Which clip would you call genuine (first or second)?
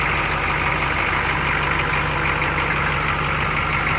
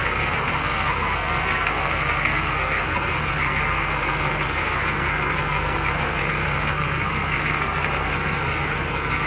first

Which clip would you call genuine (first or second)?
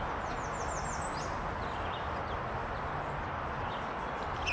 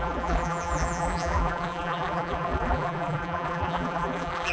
first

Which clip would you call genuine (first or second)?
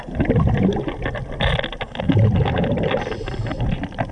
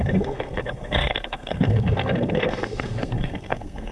first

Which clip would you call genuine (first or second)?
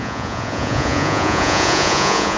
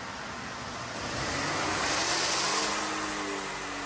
second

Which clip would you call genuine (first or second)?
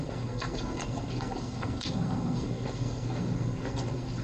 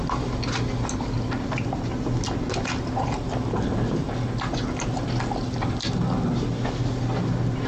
second